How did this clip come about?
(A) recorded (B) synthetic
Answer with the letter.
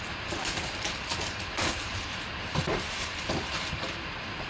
B